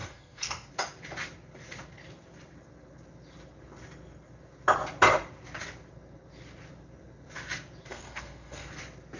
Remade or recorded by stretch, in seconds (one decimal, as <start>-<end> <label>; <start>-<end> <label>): 0.0-0.7 remade; 0.7-7.9 recorded; 7.9-8.7 remade; 8.7-9.2 recorded